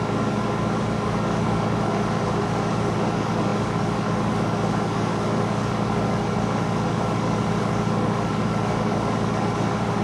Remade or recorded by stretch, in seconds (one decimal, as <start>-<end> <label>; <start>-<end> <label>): 0.0-10.0 remade